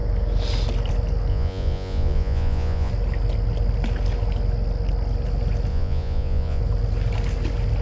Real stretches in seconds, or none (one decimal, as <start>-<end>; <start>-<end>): 0.0-1.3; 2.9-5.7; 6.6-7.8